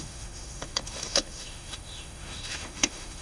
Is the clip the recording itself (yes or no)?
no